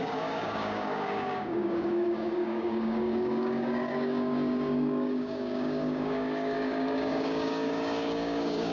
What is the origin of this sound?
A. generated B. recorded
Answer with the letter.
A